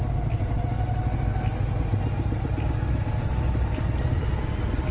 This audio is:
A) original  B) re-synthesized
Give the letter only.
A